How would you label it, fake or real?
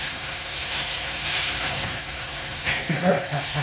fake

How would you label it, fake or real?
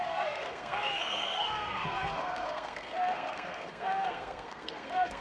fake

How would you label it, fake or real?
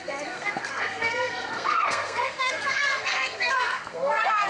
fake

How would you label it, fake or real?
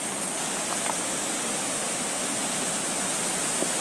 real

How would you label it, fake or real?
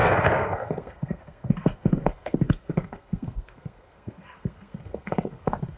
fake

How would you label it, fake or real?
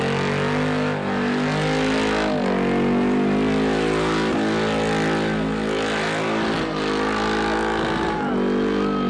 real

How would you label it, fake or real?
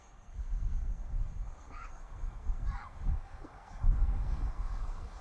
fake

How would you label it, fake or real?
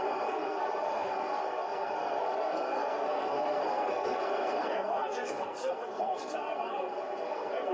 fake